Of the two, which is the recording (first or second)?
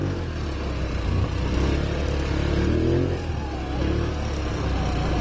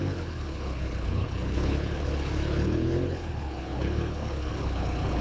first